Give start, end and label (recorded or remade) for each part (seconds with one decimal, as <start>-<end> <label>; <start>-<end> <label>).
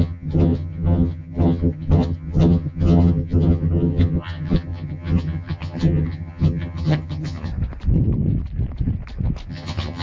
0.0-7.5 remade; 7.5-9.5 recorded; 9.5-10.0 remade